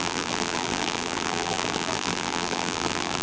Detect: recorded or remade remade